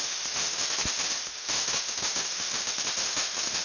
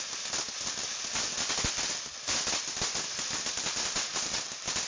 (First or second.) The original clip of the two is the second